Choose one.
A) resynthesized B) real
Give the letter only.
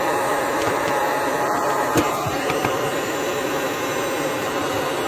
A